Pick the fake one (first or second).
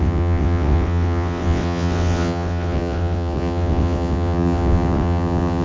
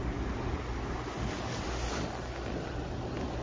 first